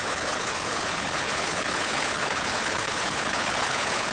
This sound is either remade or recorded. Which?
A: remade